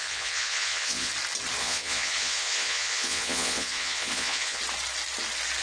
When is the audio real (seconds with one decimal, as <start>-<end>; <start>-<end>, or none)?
1.1-1.6; 4.6-5.6